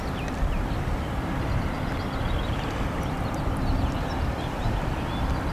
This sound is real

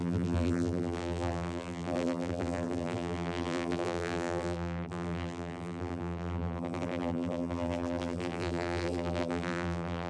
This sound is fake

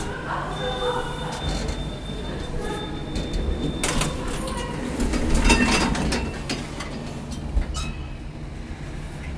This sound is real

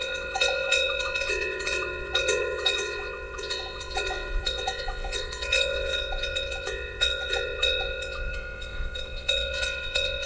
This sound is fake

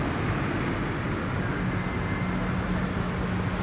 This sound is real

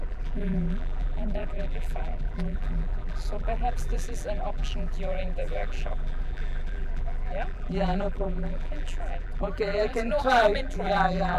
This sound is fake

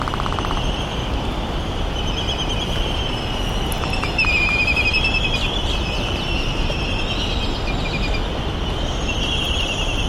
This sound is real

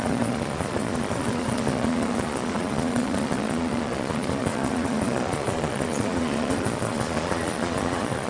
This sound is fake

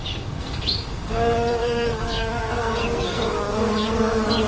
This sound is fake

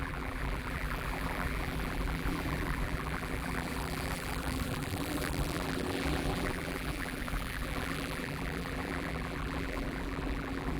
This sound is fake